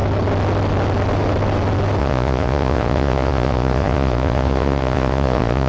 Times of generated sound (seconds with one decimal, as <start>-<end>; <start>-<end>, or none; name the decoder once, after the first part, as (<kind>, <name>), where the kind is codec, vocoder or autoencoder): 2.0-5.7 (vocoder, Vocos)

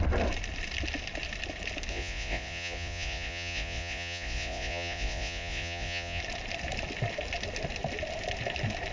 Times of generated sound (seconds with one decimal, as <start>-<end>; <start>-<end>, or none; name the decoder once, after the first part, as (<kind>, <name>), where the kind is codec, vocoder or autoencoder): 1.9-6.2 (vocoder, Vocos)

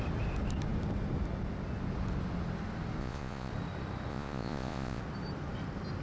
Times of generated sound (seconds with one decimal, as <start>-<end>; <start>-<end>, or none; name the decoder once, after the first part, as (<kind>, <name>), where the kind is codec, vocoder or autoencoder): 3.0-3.5 (vocoder, Vocos); 4.1-5.0